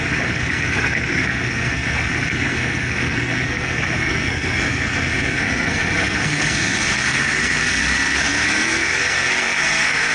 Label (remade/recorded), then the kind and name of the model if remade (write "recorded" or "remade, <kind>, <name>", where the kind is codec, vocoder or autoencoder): remade, codec, SNAC